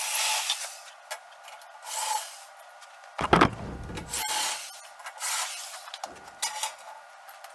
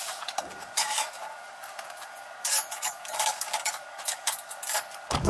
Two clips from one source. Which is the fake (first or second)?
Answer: second